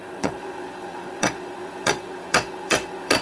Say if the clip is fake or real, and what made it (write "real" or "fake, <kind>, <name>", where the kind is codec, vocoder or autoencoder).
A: fake, vocoder, Vocos